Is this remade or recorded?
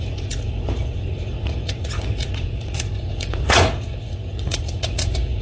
remade